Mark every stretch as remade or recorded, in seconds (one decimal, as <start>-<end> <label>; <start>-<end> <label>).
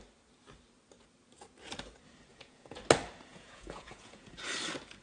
0.0-2.3 recorded; 2.3-2.8 remade; 2.8-3.3 recorded; 3.3-4.3 remade; 4.3-5.0 recorded